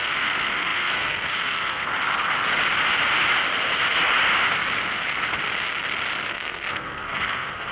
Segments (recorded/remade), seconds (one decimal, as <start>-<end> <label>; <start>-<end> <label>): 0.0-1.9 remade; 1.9-6.3 recorded; 6.3-7.7 remade